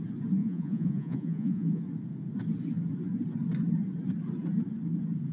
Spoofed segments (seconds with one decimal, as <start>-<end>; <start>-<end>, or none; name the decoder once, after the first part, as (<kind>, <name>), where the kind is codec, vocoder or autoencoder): 0.4-1.8 (vocoder, Vocos)